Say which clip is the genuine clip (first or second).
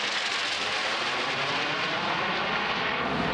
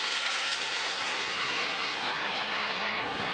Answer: first